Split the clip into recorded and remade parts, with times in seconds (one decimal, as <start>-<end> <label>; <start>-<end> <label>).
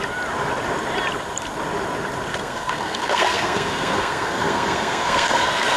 0.0-2.3 recorded; 2.3-5.8 remade